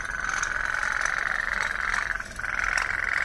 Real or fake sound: real